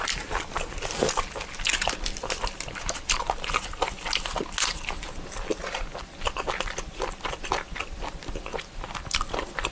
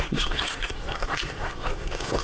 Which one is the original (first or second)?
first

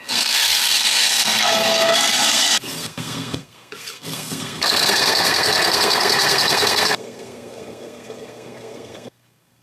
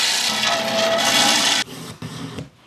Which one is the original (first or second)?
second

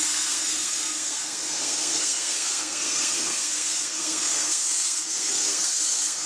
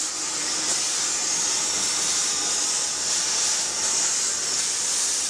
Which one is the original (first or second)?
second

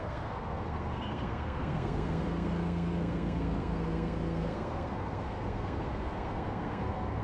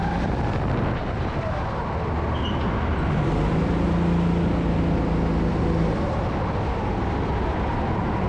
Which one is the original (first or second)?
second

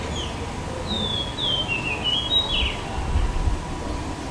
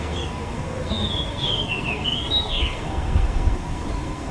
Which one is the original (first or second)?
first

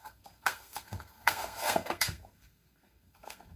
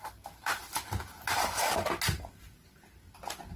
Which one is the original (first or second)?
second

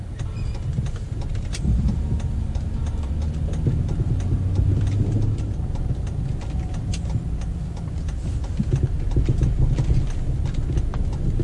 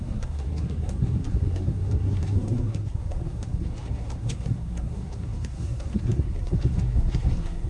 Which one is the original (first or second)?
first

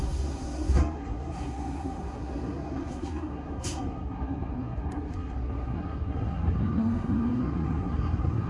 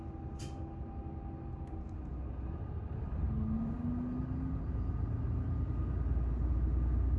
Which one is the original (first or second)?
second